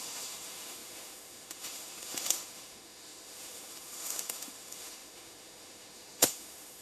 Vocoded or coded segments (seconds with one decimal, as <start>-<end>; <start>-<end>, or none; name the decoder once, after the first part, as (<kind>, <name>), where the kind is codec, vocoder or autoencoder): 0.0-6.8 (autoencoder, DAC-VAE)